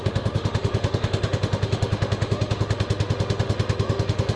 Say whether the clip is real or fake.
fake